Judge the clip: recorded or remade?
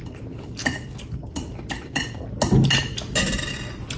recorded